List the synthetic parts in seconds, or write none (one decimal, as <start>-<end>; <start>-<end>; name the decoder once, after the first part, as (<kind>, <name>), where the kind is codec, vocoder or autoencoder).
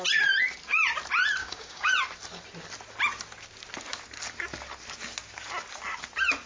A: 1.4-1.9 (codec, DAC)